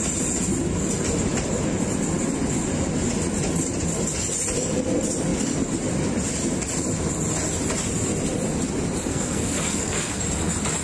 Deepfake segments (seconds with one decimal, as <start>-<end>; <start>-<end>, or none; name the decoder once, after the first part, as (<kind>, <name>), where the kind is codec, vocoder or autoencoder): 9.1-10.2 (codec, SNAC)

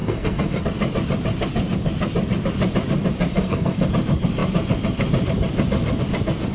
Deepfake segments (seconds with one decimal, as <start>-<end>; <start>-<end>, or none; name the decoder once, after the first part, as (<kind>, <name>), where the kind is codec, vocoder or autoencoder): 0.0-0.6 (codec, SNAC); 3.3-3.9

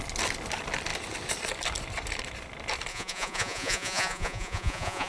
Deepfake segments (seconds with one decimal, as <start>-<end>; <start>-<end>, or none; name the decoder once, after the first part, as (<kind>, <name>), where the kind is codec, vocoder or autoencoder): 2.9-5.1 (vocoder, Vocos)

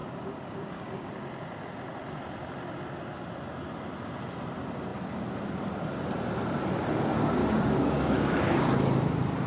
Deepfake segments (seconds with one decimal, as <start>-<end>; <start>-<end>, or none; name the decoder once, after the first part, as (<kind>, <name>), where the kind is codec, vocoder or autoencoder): 0.0-1.1 (codec, DAC); 7.4-8.7

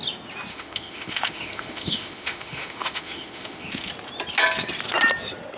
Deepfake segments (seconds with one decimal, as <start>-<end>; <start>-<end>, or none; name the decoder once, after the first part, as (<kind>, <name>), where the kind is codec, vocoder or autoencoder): 0.5-3.9 (autoencoder, DAC-VAE)